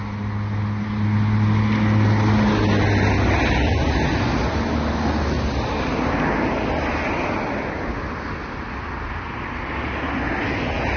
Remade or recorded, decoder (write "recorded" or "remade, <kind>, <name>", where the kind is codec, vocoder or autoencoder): recorded